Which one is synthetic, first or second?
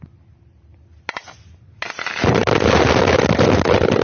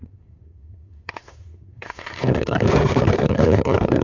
second